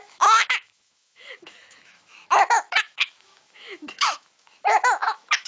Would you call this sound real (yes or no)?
no